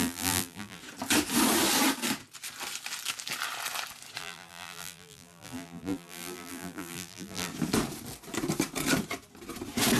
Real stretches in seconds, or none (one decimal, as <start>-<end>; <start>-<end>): 0.8-4.2; 7.5-10.0